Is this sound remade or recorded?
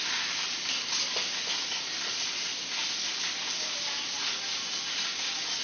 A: recorded